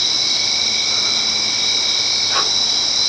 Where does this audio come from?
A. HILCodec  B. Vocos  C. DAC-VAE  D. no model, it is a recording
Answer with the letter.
D